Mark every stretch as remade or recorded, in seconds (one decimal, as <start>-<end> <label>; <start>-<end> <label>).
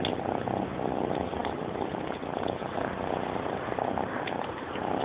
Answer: 0.0-5.0 recorded